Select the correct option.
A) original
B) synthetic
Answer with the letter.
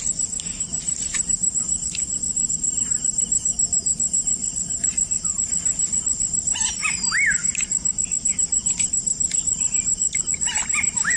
A